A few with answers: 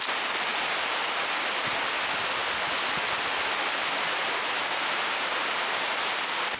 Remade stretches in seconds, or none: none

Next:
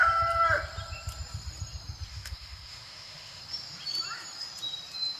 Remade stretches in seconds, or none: 2.1-3.4 (autoencoder, DAC-VAE)

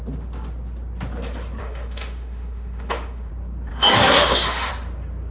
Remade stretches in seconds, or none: 1.6-3.3 (autoencoder, DAC-VAE); 3.7-4.7

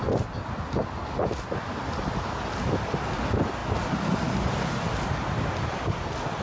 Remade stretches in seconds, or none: none

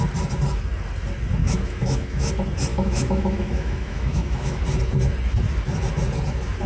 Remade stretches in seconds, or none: 1.4-2.3 (autoencoder, DAC-VAE); 2.7-4.6

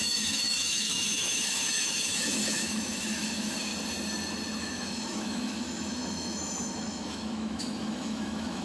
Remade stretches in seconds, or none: 0.0-3.7 (autoencoder, DAC-VAE); 4.6-8.6

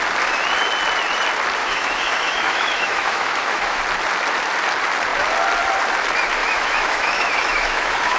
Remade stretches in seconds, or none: 1.6-3.8 (autoencoder, DAC-VAE); 6.4-8.2

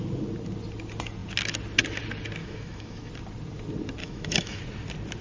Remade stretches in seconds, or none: 2.4-3.1 (autoencoder, DAC-VAE); 4.0-4.6